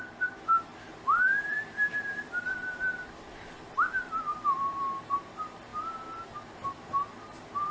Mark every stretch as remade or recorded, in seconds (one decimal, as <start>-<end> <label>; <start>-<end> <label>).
0.0-7.7 remade